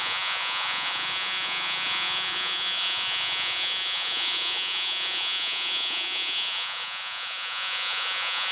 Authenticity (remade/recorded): remade